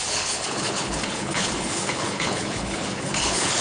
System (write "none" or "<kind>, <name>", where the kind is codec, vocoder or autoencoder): codec, HILCodec